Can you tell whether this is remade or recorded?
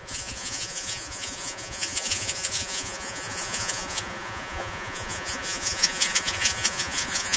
remade